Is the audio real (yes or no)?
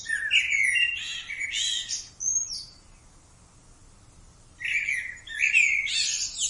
yes